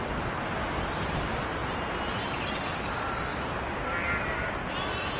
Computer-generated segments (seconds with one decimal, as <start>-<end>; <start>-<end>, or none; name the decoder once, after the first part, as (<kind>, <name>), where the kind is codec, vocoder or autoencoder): none